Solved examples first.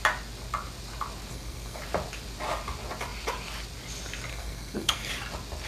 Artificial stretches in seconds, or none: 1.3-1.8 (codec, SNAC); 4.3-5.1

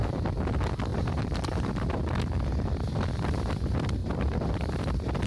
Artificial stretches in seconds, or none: 0.9-1.7 (vocoder, BigVGAN v2); 4.0-4.7